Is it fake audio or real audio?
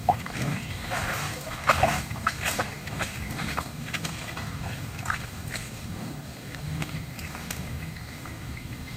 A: fake